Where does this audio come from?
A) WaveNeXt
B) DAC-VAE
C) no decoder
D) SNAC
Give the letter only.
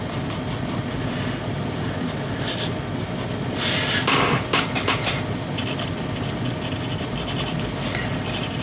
C